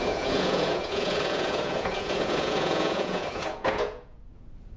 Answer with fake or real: fake